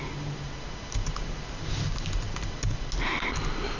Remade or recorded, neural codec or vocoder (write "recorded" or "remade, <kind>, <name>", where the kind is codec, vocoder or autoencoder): recorded